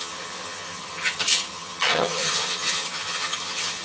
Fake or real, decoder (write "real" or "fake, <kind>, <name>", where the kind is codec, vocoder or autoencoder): fake, vocoder, HiFi-GAN